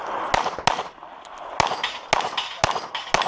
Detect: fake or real real